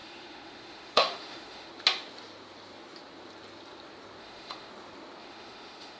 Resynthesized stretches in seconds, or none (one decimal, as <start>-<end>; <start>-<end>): 0.0-1.7; 4.2-4.7; 5.2-6.0